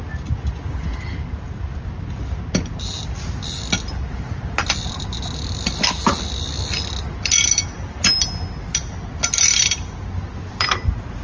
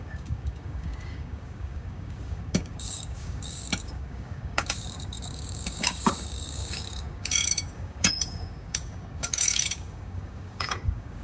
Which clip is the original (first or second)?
first